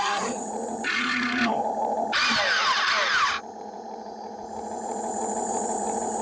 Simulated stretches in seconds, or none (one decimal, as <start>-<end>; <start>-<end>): 0.0-1.4; 3.6-6.2